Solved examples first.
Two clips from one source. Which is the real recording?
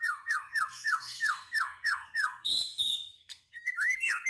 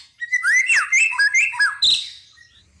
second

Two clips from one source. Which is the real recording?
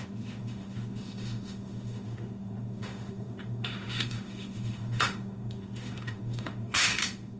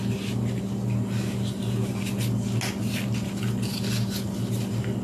second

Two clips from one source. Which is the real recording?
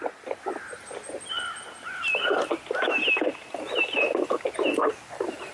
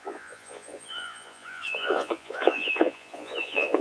first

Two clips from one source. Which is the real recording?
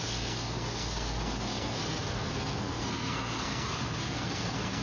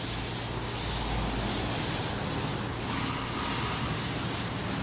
second